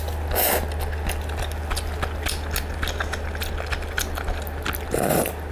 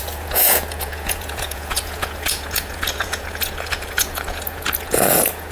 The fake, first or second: second